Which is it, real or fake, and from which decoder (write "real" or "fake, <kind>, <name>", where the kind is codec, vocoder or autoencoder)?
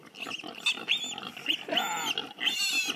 real